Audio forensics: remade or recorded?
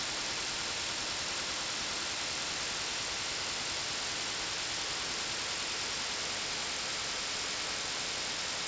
recorded